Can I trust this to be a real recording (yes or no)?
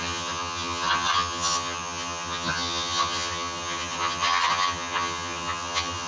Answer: no